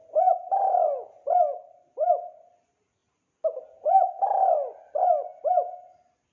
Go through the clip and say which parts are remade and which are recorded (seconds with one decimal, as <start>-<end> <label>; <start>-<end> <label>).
0.0-6.3 recorded